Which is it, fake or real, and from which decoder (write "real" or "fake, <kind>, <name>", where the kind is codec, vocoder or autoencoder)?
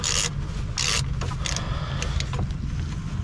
real